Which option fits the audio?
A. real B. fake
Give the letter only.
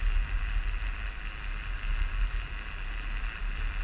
A